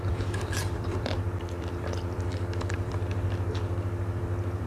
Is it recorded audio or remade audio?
remade